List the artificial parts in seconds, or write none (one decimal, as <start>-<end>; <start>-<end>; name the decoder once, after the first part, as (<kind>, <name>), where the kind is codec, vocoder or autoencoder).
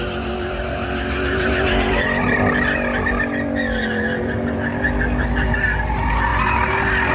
none